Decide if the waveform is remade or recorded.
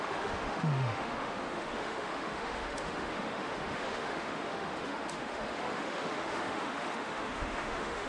remade